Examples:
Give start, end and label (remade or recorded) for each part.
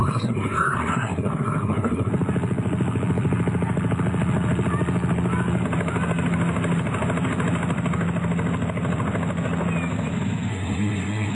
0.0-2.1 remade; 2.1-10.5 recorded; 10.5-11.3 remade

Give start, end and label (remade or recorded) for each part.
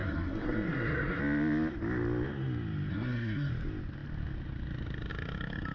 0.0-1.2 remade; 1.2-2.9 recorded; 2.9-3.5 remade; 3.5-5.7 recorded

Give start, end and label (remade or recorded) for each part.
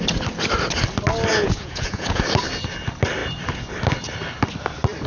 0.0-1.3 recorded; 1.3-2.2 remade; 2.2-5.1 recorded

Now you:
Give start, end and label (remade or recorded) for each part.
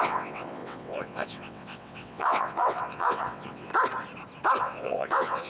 0.0-3.7 remade; 3.7-4.6 recorded; 4.6-5.5 remade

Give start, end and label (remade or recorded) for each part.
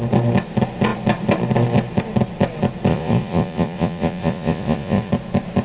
0.0-2.9 recorded; 2.9-5.1 remade; 5.1-5.6 recorded